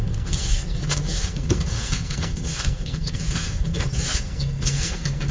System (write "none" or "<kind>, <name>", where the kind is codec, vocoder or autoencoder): codec, SNAC